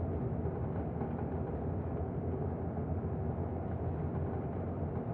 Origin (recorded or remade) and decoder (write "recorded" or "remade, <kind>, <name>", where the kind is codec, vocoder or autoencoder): recorded